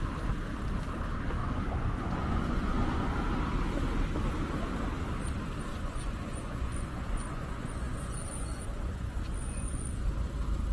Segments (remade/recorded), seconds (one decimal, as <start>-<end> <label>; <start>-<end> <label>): 0.0-1.4 recorded; 1.4-3.2 remade; 3.2-5.7 recorded; 5.7-10.1 remade; 10.1-10.7 recorded